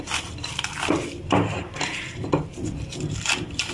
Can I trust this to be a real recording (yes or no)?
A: yes